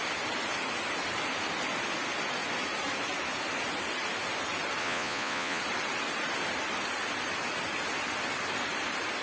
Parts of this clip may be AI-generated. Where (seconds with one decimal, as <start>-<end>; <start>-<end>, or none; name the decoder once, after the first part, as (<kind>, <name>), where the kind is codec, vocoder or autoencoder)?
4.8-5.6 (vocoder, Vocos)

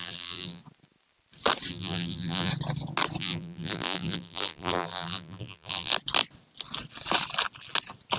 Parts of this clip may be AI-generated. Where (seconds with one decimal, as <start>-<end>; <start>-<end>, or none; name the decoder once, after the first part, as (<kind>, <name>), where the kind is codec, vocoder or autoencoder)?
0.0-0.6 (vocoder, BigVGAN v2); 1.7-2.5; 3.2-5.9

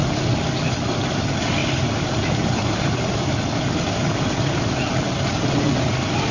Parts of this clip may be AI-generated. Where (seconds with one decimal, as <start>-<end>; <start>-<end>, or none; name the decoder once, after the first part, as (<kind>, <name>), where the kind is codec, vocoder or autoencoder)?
none